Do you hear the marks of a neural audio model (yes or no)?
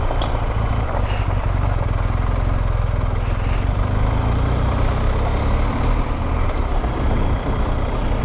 no